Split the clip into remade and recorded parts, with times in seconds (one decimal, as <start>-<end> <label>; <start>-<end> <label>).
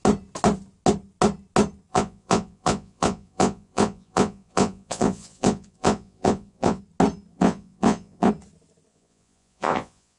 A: 0.0-1.9 recorded; 1.9-6.8 remade; 6.8-7.3 recorded; 7.3-8.3 remade; 8.3-8.9 recorded; 8.9-10.2 remade